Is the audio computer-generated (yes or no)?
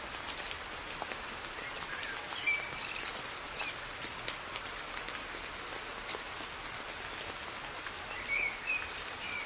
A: no